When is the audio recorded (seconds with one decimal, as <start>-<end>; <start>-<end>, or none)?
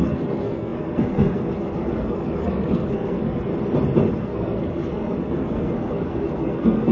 3.5-4.1